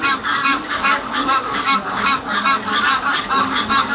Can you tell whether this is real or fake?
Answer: fake